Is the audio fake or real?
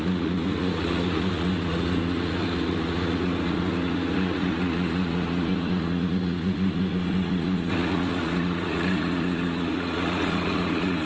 fake